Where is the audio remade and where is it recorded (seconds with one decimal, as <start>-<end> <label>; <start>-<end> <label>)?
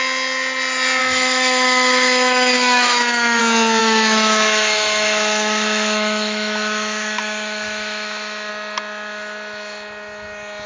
0.0-1.0 recorded; 1.0-3.4 remade; 3.4-3.8 recorded; 3.8-8.5 remade; 8.5-10.7 recorded